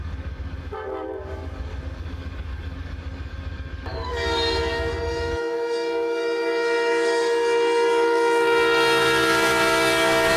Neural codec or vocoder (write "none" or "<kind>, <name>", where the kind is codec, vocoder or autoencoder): codec, DAC